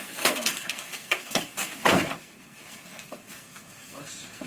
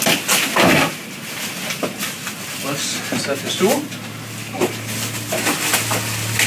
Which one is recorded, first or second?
second